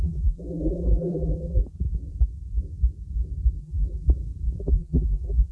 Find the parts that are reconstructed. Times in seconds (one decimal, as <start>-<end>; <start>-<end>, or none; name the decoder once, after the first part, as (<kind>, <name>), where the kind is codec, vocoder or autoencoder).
0.0-1.6 (vocoder, BigVGAN v2); 3.6-4.0; 4.6-5.5